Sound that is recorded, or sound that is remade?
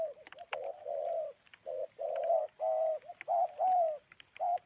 recorded